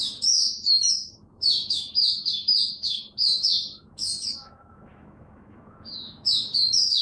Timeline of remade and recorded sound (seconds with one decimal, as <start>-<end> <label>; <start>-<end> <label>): 0.0-7.0 remade

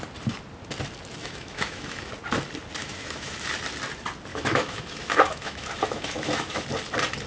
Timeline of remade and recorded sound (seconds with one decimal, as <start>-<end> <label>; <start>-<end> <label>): 0.0-1.2 recorded; 1.2-2.1 remade; 2.1-2.8 recorded; 2.8-3.5 remade; 3.5-4.3 recorded; 4.3-6.6 remade; 6.6-7.3 recorded

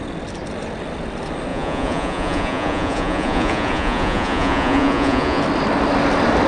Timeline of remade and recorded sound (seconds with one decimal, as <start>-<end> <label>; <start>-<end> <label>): 0.0-1.5 recorded; 1.5-5.4 remade; 5.4-6.5 recorded